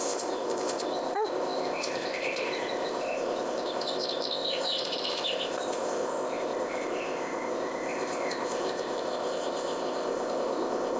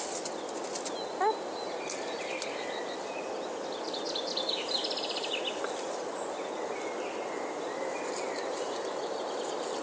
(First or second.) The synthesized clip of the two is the first